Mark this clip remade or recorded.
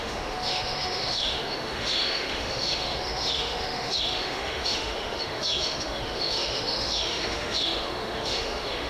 remade